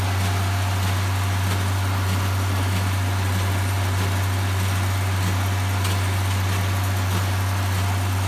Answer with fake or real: real